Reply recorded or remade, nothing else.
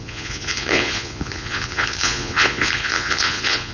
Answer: remade